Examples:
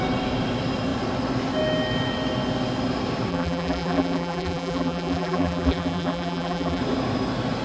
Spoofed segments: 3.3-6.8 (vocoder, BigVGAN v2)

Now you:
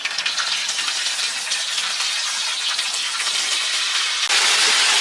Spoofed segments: 1.2-3.8 (vocoder, BigVGAN v2)

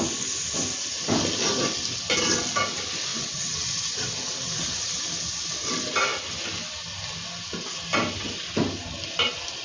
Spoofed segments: 3.1-5.0 (vocoder, WaveNeXt)

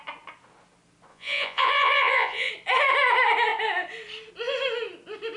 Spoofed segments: 1.1-2.5 (vocoder, Vocos)